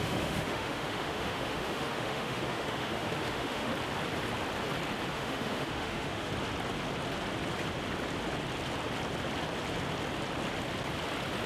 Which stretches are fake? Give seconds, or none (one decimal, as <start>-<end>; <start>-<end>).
0.0-3.7; 5.1-6.3